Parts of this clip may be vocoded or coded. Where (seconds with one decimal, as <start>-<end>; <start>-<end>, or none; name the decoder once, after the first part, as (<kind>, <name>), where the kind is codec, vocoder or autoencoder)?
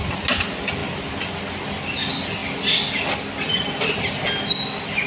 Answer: none